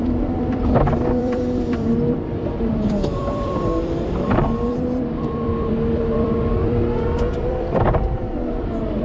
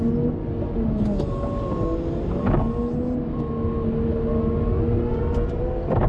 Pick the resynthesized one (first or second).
first